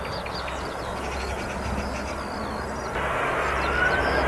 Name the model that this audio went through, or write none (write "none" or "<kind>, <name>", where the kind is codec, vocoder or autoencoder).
none